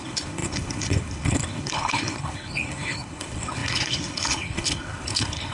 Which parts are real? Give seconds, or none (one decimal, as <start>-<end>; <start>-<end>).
none